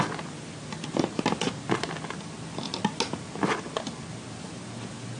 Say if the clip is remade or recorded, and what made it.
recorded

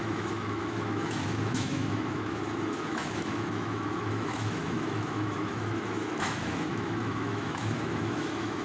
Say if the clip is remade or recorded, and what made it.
remade, autoencoder, DAC-VAE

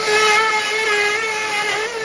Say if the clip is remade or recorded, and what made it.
recorded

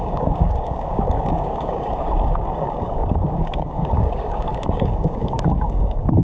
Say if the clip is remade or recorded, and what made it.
remade, codec, DAC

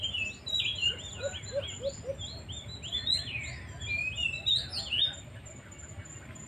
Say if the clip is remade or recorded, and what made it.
recorded